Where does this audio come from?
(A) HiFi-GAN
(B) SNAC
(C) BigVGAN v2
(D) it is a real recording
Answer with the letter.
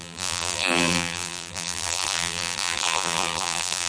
C